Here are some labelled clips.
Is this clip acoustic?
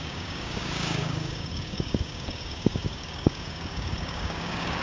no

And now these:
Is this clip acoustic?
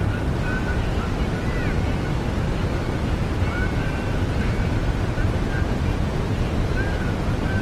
yes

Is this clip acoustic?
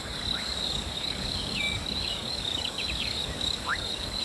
no